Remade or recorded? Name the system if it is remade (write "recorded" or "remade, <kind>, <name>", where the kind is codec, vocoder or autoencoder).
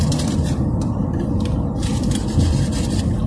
recorded